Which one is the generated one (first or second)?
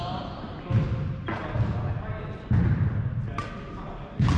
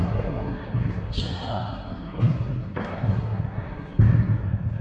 second